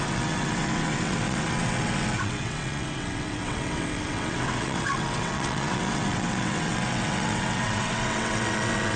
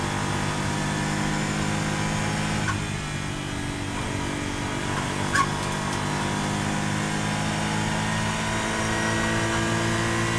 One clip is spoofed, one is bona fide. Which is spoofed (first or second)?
first